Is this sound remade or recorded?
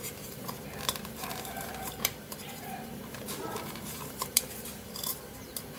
remade